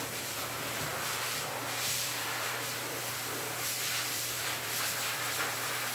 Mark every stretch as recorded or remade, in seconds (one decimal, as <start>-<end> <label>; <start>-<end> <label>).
0.0-5.9 remade